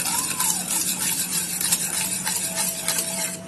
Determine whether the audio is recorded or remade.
remade